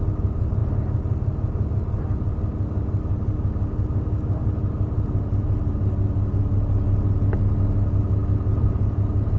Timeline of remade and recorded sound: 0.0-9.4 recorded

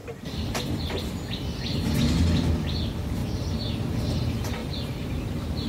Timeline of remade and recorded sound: 0.0-4.6 recorded; 4.6-5.7 remade

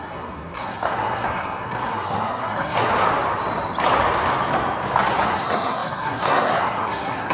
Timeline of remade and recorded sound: 0.0-2.9 remade; 2.9-5.2 recorded; 5.2-7.3 remade

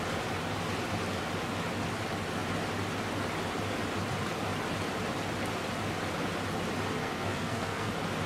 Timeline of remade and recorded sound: 0.0-7.0 recorded; 7.0-7.9 remade; 7.9-8.3 recorded

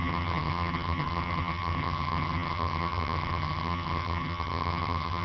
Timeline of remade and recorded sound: 0.0-5.2 remade

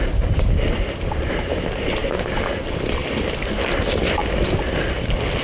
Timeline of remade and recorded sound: 0.0-5.4 recorded